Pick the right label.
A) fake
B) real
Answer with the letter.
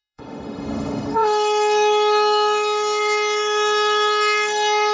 A